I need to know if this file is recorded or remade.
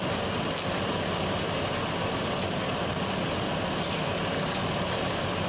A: recorded